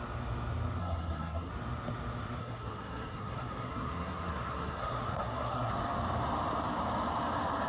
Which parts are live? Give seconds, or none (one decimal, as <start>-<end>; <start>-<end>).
0.0-0.8; 1.5-2.4; 5.7-7.7